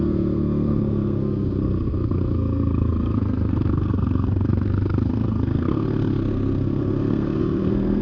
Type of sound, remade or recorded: remade